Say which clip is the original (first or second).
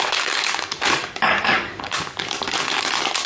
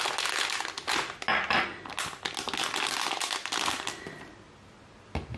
second